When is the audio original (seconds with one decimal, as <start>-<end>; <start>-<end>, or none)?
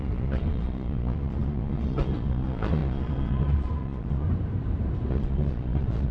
4.3-5.1